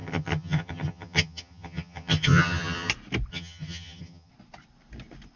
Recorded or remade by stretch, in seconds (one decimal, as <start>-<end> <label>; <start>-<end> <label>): 0.0-2.9 remade; 2.9-3.3 recorded; 3.3-4.3 remade; 4.3-5.4 recorded